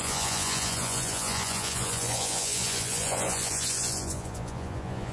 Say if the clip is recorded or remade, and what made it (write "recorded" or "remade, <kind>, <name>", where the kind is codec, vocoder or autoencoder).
remade, vocoder, Vocos